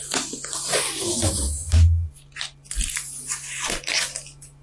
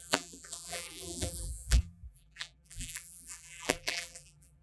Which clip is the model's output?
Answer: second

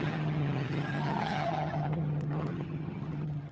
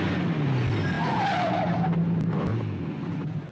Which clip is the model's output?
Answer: first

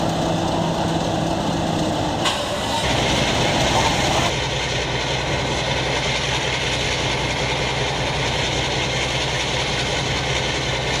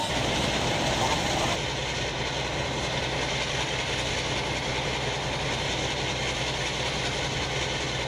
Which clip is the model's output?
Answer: second